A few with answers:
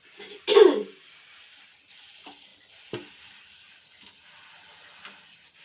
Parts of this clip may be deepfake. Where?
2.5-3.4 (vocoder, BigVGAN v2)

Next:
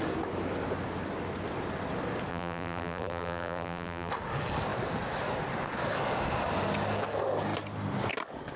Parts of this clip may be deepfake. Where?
2.3-4.1 (vocoder, BigVGAN v2)

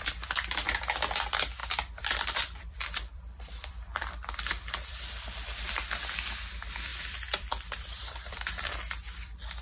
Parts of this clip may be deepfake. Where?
1.6-5.8 (vocoder, BigVGAN v2); 6.9-8.8